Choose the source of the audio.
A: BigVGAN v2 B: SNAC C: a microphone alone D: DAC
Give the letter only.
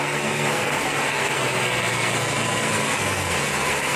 B